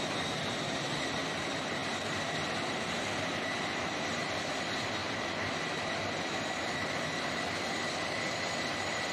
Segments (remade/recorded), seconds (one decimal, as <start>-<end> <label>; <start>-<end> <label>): 0.0-5.0 remade; 5.0-6.4 recorded; 6.4-9.1 remade